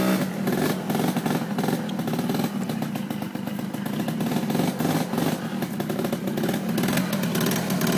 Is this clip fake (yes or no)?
no